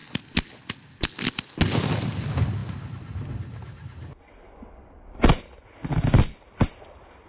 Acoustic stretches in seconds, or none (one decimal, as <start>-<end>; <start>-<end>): 0.0-7.3